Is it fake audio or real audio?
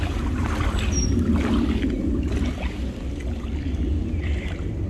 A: real